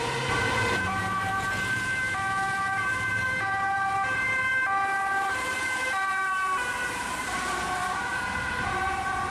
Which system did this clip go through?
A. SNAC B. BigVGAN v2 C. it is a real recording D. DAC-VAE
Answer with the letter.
B